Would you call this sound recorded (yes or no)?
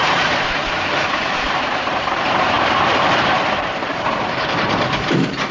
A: no